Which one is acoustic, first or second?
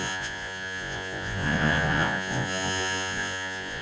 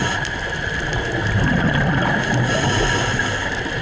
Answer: second